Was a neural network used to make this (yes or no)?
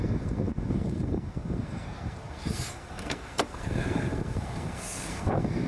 yes